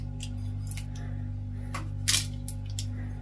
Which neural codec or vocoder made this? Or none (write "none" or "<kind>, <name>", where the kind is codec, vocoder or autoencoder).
none